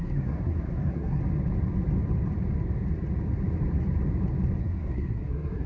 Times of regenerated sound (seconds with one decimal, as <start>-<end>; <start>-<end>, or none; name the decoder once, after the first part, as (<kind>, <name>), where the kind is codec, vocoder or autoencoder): 0.0-1.2 (codec, SNAC); 4.6-5.7